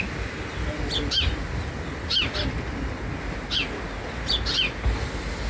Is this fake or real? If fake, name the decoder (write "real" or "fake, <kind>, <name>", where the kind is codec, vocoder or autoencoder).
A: real